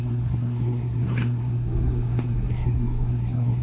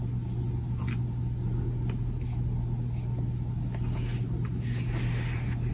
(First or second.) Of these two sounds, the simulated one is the first